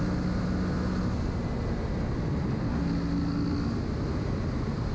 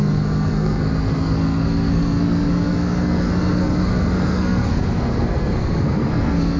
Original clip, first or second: first